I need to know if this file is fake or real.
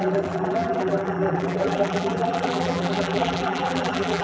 fake